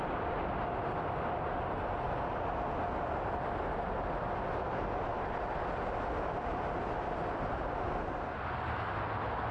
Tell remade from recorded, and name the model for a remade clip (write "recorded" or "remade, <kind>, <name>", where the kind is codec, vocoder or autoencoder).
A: recorded